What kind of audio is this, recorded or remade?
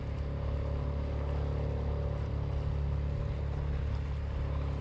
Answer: recorded